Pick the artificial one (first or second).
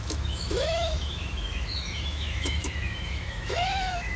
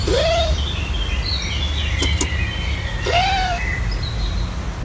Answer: first